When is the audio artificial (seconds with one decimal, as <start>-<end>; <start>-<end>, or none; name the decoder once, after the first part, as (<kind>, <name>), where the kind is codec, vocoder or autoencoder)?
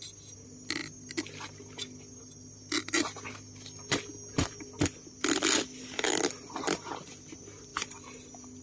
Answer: none